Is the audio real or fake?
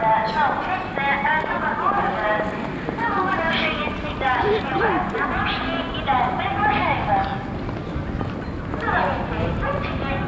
real